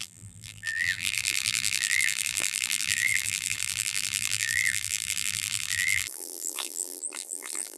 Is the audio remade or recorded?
remade